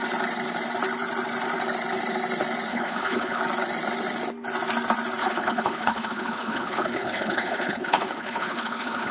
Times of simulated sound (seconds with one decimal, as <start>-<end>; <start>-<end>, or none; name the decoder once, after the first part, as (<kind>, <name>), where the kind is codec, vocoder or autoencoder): 2.7-3.4 (codec, HILCodec); 5.2-9.1